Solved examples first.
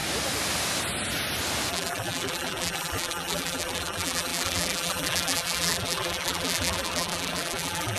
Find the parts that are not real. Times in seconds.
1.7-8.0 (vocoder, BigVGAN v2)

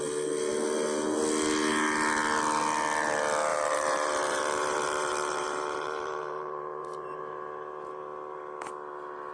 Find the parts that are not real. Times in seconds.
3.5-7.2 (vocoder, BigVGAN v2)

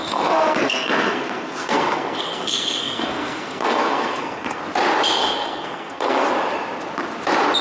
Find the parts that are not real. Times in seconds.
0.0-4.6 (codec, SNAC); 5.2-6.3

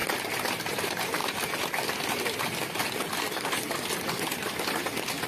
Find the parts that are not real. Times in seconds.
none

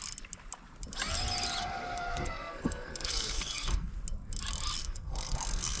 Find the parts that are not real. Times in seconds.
1.6-3.9 (codec, SNAC); 4.8-5.8

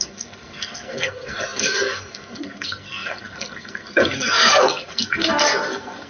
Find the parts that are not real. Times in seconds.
0.0-6.1 (codec, SNAC)

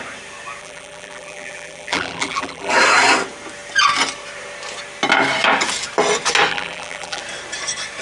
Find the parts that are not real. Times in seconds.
0.6-2.7 (vocoder, BigVGAN v2); 6.5-7.2